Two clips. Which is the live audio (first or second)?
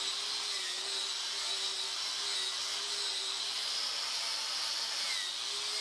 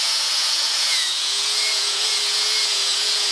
first